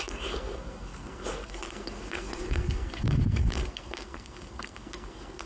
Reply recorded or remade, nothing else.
remade